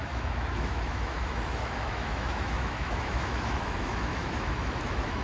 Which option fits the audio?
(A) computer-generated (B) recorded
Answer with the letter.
A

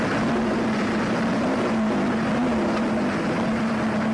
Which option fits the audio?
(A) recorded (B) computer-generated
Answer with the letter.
A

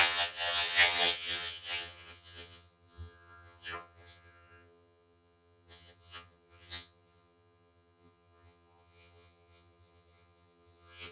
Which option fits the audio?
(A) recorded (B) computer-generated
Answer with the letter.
B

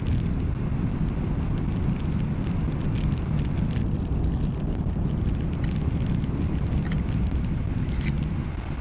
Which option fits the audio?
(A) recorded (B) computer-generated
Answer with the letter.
A